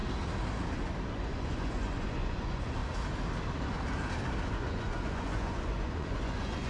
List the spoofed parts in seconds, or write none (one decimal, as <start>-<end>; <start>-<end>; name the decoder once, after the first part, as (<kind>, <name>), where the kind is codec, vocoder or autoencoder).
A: 1.1-2.8 (vocoder, Vocos); 4.5-6.7